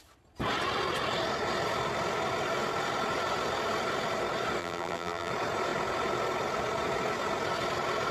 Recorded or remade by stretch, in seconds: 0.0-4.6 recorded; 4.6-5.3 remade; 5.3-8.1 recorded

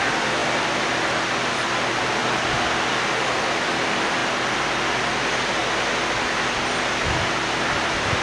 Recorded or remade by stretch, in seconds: 0.0-0.4 remade; 0.4-1.1 recorded; 1.1-2.2 remade; 2.2-3.6 recorded; 3.6-4.2 remade; 4.2-5.1 recorded; 5.1-5.6 remade; 5.6-7.6 recorded; 7.6-8.2 remade

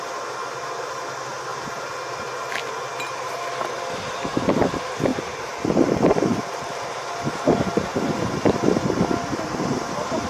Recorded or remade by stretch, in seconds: 0.0-1.5 recorded; 1.5-2.2 remade; 2.2-7.9 recorded; 7.9-8.8 remade; 8.8-10.3 recorded

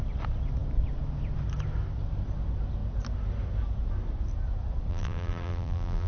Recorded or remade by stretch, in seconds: 0.0-4.9 recorded; 4.9-6.1 remade

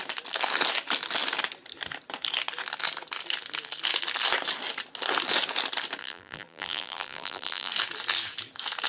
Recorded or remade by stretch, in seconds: 0.0-6.0 recorded; 6.0-7.7 remade; 7.7-8.9 recorded

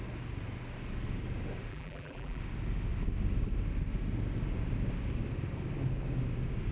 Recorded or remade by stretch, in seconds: 0.0-1.7 recorded; 1.7-2.4 remade; 2.4-6.7 recorded

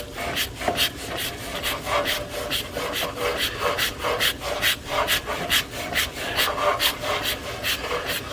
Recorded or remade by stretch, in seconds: 0.0-4.7 recorded; 4.7-6.1 remade; 6.1-6.7 recorded; 6.7-7.4 remade; 7.4-8.3 recorded